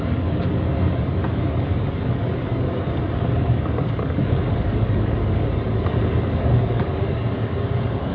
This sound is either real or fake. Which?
fake